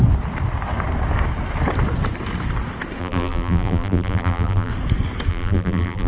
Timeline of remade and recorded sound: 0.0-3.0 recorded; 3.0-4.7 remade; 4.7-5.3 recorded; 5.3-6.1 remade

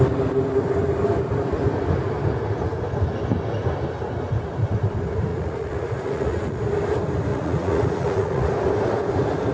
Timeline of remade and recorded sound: 0.0-5.3 recorded; 5.3-6.6 remade; 6.6-7.3 recorded; 7.3-8.5 remade; 8.5-9.5 recorded

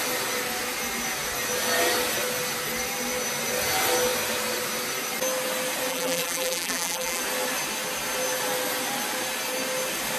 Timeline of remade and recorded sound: 0.0-5.9 recorded; 5.9-7.2 remade; 7.2-10.2 recorded

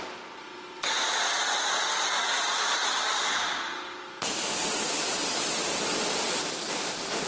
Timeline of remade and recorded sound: 0.0-7.3 recorded

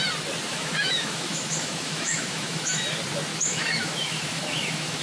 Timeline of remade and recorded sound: 0.0-0.5 recorded; 0.5-2.8 remade; 2.8-3.3 recorded; 3.3-5.0 remade